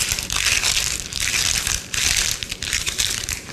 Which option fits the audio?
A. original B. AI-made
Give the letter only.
B